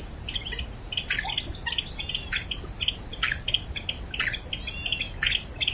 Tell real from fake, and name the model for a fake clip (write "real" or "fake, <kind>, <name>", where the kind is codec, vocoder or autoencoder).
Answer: real